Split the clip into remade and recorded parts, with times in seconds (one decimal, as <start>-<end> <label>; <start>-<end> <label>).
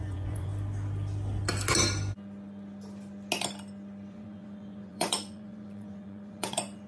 0.0-0.5 remade; 0.5-4.1 recorded; 4.1-6.9 remade